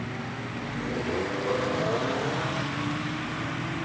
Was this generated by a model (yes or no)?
no